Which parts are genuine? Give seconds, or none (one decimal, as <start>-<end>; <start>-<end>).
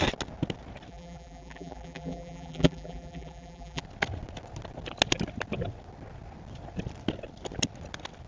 0.0-0.9; 3.8-8.3